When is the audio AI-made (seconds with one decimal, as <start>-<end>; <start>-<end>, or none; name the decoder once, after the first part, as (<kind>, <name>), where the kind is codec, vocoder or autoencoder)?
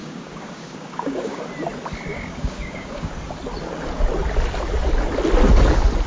0.0-1.4 (codec, DAC); 2.1-3.1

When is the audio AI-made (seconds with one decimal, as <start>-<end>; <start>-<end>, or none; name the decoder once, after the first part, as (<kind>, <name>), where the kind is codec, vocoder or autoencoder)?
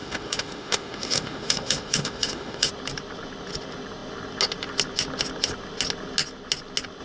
0.0-2.7 (autoencoder, DAC-VAE)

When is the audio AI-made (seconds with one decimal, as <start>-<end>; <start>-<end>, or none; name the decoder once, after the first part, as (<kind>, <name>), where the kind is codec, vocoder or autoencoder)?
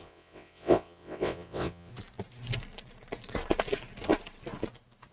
0.0-1.9 (vocoder, WaveNeXt)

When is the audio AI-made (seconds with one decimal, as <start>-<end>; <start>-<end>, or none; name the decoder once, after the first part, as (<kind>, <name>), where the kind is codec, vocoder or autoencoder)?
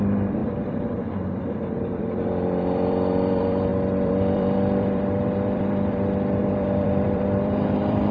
0.0-0.4 (vocoder, BigVGAN v2); 1.4-8.1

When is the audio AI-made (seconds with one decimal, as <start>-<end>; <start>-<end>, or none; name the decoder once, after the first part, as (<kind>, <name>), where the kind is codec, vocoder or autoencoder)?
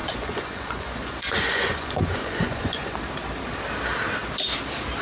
0.0-3.0 (vocoder, Vocos)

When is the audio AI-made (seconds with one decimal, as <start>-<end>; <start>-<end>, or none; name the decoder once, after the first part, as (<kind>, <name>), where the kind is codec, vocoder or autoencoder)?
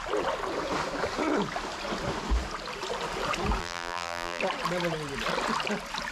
3.6-4.4 (vocoder, BigVGAN v2)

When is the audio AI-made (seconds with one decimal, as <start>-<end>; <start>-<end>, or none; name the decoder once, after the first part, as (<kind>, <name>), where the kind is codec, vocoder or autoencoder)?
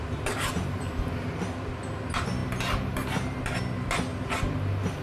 none